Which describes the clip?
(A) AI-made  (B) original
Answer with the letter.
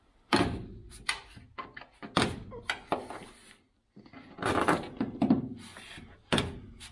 B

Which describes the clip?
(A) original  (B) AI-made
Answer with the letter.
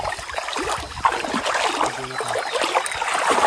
A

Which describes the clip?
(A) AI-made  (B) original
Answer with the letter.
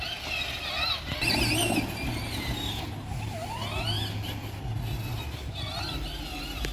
B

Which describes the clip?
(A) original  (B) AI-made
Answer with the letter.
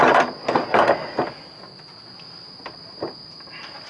A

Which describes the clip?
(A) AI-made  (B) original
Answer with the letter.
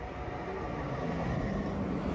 B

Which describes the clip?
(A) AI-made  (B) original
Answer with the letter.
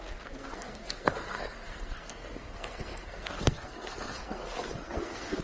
A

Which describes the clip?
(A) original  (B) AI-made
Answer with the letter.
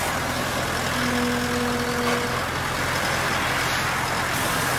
A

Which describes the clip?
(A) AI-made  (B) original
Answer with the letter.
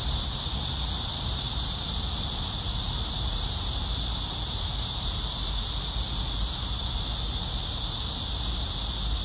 B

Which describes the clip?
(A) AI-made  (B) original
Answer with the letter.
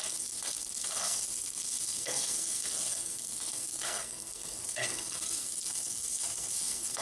A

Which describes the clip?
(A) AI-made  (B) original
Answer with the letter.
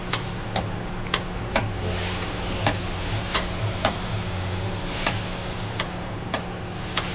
B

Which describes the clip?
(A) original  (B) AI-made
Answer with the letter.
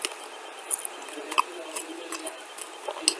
A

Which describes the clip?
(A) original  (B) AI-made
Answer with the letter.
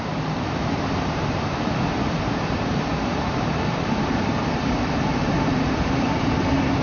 B